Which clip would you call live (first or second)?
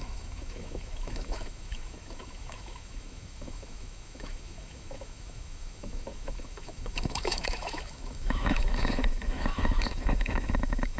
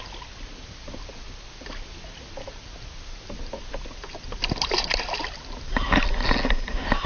second